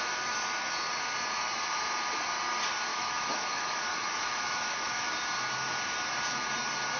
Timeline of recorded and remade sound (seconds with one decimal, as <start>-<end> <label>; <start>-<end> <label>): 0.0-2.9 recorded; 2.9-5.1 remade; 5.1-7.0 recorded